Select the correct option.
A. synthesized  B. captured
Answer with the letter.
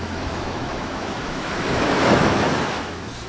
A